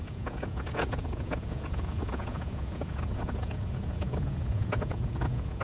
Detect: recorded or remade remade